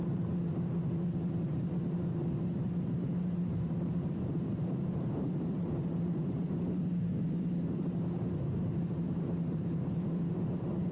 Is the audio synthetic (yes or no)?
yes